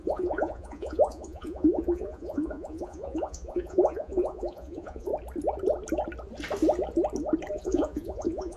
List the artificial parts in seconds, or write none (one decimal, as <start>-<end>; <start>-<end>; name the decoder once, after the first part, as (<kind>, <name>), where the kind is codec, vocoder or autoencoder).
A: 0.0-5.1 (vocoder, Vocos); 7.5-8.6